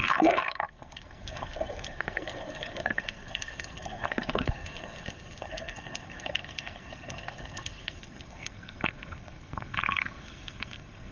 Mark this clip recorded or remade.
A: remade